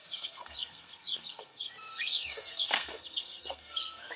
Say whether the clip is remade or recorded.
remade